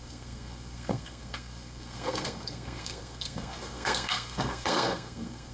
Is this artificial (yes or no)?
yes